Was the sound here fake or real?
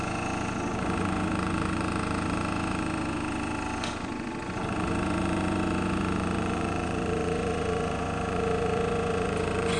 fake